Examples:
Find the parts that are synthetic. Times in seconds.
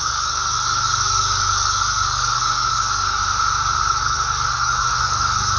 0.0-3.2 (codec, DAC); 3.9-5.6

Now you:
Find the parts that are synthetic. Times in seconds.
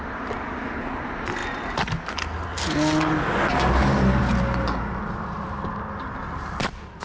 none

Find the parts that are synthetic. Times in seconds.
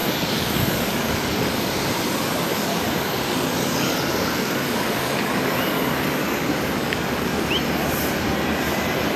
0.0-1.7 (codec, DAC); 2.5-7.5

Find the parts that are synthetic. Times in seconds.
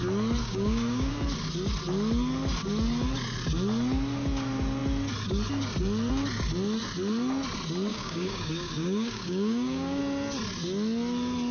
0.4-1.1 (codec, DAC); 7.9-10.0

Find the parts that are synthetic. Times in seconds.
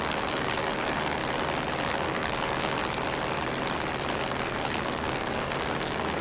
0.0-1.2 (codec, DAC); 1.8-2.8; 4.2-6.2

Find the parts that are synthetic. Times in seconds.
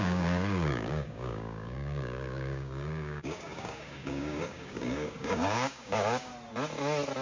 0.0-6.3 (codec, DAC)